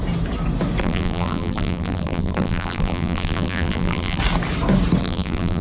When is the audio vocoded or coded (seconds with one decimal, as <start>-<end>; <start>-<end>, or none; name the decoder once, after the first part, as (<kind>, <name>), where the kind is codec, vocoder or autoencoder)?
0.8-4.2 (vocoder, BigVGAN v2); 5.0-5.6